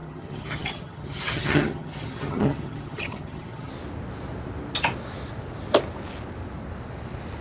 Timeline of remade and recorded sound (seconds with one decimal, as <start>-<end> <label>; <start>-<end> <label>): 0.0-3.7 remade; 3.7-7.4 recorded